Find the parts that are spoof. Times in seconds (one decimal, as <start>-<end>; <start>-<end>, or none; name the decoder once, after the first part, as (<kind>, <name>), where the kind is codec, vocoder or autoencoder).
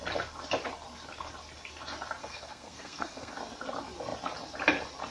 2.2-3.3 (codec, SNAC)